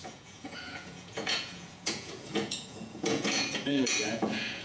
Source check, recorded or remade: remade